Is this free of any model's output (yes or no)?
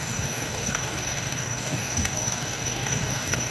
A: no